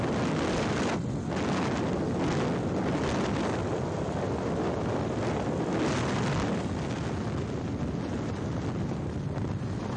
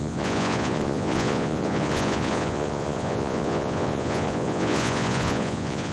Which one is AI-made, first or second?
second